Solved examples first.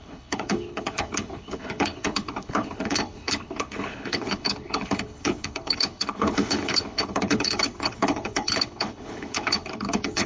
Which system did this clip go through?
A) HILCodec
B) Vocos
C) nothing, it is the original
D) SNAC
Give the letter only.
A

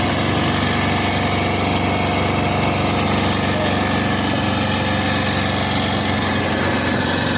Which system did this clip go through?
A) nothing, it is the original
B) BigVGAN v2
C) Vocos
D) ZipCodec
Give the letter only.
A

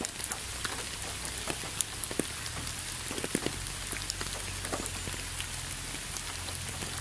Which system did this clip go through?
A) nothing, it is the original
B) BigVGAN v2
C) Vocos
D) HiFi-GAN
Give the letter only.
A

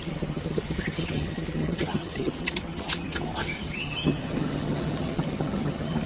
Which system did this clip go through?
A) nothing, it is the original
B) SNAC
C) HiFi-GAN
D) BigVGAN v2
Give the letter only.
C